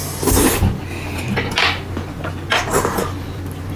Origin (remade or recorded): recorded